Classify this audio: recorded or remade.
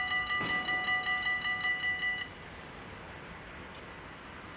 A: recorded